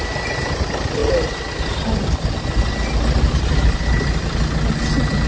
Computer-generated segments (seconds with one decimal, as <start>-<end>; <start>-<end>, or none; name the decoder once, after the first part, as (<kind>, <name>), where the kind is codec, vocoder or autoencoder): none